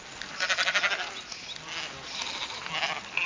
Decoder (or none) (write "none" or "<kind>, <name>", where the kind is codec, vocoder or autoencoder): none